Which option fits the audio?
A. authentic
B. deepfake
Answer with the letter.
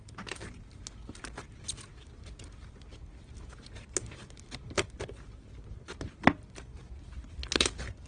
A